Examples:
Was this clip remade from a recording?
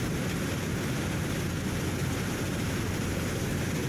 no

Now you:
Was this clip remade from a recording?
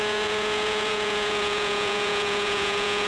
yes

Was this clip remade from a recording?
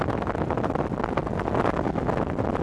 no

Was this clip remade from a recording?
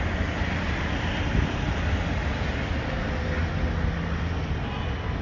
no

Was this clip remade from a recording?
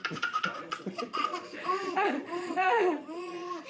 yes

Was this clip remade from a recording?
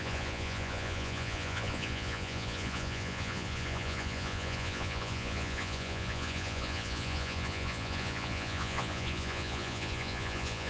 yes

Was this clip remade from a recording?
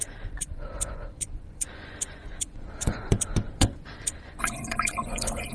yes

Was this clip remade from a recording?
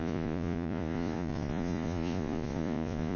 yes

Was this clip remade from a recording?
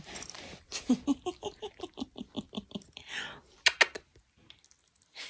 no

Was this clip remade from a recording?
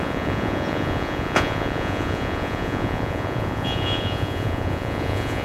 yes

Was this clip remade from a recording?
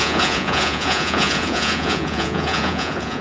yes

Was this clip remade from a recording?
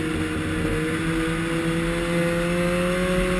no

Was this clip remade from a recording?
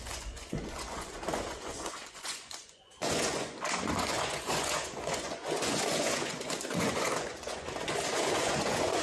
yes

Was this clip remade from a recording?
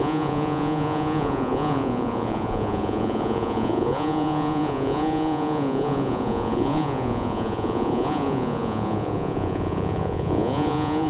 yes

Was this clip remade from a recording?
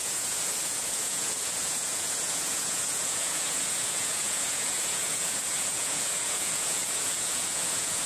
yes